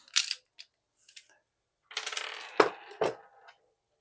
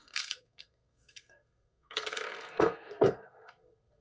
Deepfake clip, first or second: second